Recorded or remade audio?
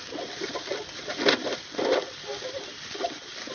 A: remade